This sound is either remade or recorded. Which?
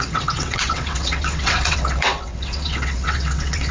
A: remade